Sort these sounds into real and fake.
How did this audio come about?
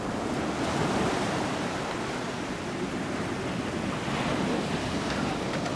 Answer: real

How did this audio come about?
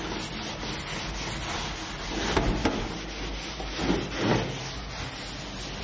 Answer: real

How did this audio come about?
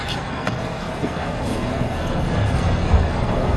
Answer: fake